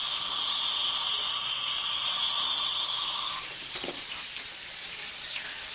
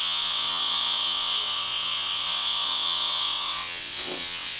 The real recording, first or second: first